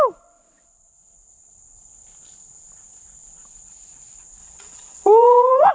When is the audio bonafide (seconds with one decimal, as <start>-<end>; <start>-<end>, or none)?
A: 0.0-4.4